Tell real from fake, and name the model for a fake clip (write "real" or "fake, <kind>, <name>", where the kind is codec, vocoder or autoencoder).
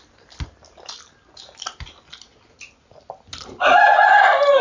real